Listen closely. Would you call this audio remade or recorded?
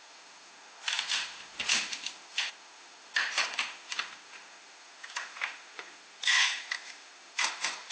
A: remade